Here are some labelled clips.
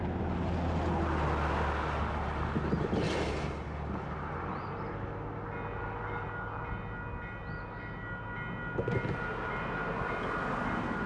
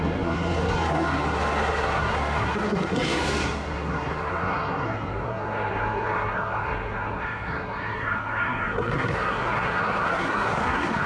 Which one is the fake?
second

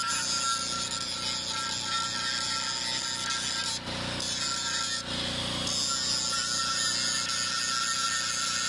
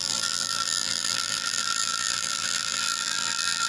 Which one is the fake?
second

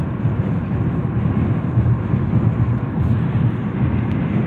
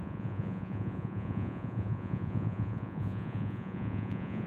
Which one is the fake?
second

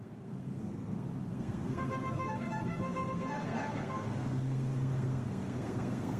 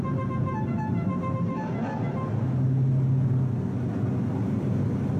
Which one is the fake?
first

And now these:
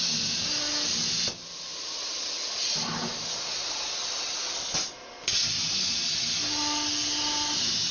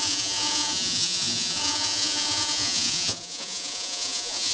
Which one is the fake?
second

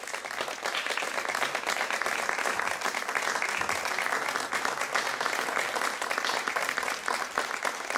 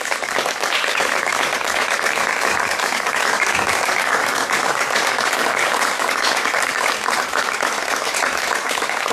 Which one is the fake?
second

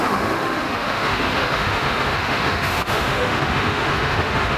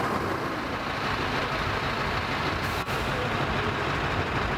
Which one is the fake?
first